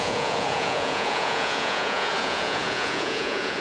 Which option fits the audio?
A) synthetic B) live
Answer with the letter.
A